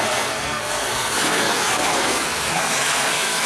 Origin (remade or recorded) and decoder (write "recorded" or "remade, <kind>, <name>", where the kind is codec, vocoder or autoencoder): remade, codec, SNAC